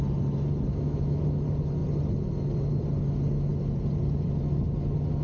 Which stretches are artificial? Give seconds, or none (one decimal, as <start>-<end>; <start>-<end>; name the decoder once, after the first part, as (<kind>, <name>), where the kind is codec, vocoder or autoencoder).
0.7-1.2 (autoencoder, DAC-VAE)